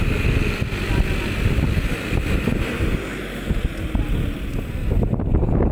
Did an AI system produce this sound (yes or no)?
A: no